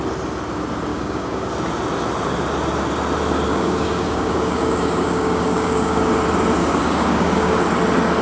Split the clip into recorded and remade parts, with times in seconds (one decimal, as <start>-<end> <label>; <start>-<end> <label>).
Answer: 0.0-0.9 recorded; 0.9-1.5 remade; 1.5-3.5 recorded; 3.5-6.1 remade; 6.1-6.6 recorded; 6.6-7.6 remade; 7.6-8.2 recorded